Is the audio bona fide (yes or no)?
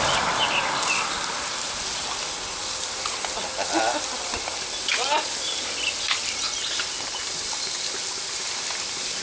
yes